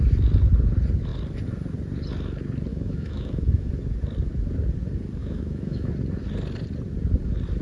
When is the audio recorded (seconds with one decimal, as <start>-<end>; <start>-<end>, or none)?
0.0-2.7; 3.7-5.2; 5.9-7.6